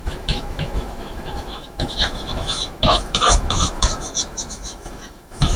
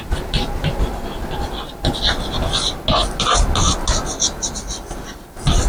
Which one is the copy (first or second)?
first